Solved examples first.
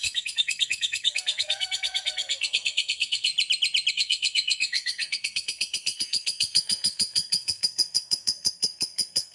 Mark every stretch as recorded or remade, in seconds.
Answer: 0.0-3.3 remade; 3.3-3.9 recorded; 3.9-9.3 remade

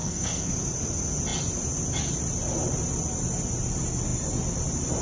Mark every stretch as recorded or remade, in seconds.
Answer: 0.0-0.5 remade; 0.5-5.0 recorded

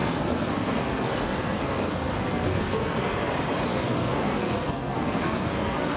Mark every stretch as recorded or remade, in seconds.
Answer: 0.0-3.3 remade; 3.3-3.7 recorded; 3.7-6.0 remade

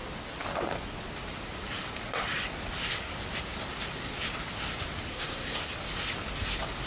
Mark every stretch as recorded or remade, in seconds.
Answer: 0.0-5.1 recorded; 5.1-5.6 remade; 5.6-6.9 recorded